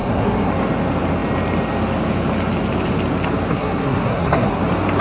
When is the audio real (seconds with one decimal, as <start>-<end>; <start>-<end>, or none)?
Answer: 0.5-3.5; 4.6-5.0